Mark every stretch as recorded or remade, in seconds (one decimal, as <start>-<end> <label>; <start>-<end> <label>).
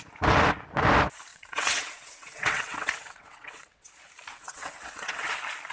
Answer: 0.0-1.3 recorded; 1.3-3.9 remade; 3.9-4.3 recorded; 4.3-5.3 remade; 5.3-5.7 recorded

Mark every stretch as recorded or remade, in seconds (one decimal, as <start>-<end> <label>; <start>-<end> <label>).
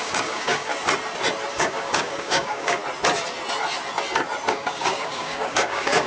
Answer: 0.0-0.7 remade; 0.7-1.5 recorded; 1.5-2.8 remade; 2.8-4.5 recorded; 4.5-6.1 remade